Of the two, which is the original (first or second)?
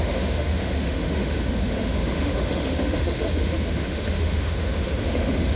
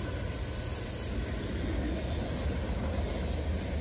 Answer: second